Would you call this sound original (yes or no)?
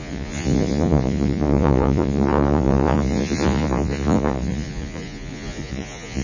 no